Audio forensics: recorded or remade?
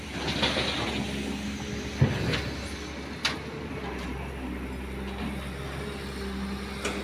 recorded